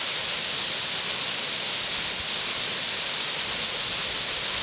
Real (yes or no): yes